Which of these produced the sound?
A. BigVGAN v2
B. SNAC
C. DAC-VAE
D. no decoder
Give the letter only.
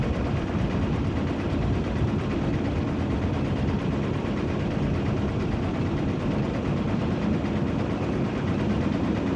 A